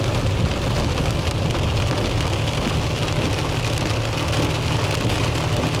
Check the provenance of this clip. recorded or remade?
recorded